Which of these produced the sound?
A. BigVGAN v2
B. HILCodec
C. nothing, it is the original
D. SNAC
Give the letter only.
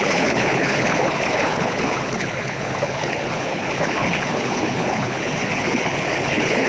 B